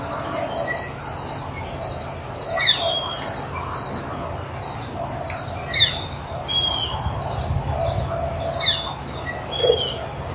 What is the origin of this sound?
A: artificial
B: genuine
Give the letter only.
B